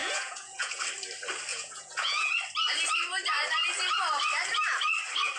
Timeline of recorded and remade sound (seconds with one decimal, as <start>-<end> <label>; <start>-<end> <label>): 0.0-0.8 remade; 0.8-1.5 recorded; 1.5-2.3 remade; 2.3-5.4 recorded